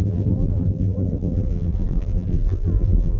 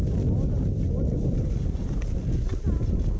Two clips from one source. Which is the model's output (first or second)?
first